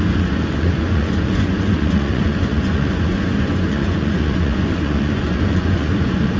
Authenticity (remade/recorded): remade